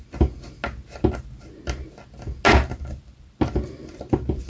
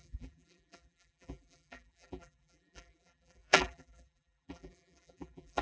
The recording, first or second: first